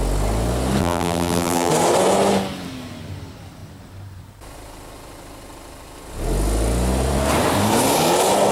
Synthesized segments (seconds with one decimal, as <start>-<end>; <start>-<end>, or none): 0.8-1.7